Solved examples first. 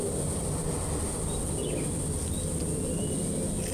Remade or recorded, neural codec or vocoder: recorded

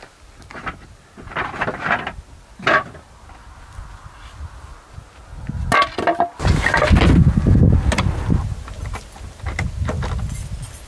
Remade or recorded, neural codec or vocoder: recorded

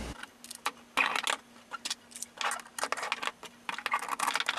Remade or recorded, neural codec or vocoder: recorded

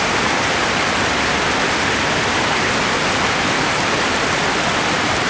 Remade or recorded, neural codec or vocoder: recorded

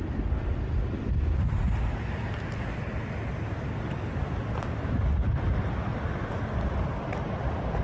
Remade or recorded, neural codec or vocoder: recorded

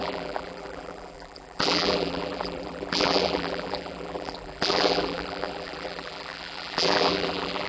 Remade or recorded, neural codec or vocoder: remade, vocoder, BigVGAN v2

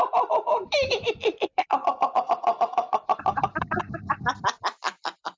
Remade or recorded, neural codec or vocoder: remade, vocoder, BigVGAN v2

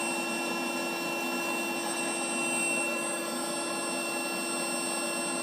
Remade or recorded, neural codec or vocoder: recorded